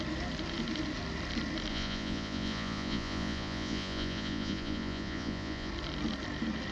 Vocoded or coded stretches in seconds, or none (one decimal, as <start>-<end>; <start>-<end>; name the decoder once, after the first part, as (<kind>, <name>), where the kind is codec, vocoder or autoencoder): 1.7-5.7 (vocoder, Vocos)